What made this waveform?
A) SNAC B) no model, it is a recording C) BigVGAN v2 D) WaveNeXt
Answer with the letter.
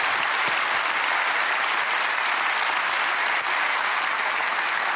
B